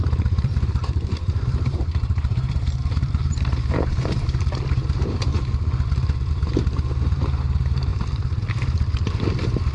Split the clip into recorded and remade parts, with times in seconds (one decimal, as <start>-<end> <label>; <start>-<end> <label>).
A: 0.0-5.3 remade; 5.3-6.3 recorded; 6.3-9.7 remade